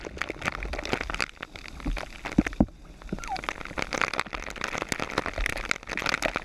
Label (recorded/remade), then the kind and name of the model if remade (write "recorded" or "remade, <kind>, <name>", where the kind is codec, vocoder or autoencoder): recorded